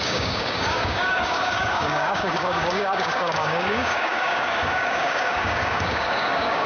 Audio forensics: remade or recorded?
remade